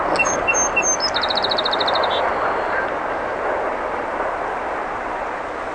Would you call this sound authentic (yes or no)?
yes